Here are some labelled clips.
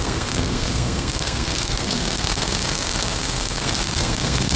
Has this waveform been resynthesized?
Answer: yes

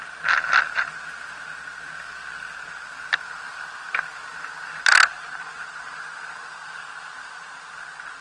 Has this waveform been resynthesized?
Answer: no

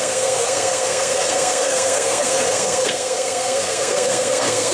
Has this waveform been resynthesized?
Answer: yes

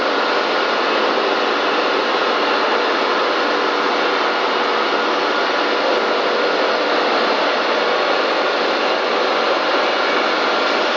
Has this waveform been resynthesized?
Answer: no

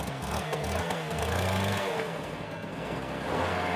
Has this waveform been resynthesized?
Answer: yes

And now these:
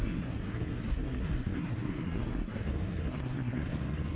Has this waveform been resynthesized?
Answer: yes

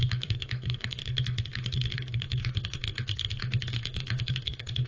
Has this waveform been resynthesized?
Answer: yes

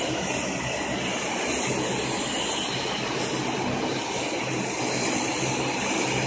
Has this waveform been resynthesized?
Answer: no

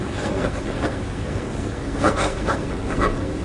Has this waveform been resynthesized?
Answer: yes